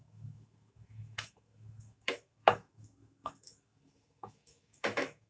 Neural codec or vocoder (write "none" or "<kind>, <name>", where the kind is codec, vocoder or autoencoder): autoencoder, DAC-VAE